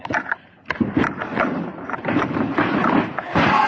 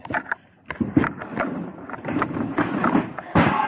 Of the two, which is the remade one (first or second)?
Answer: second